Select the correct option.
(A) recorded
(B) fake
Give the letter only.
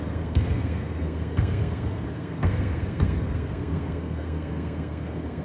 B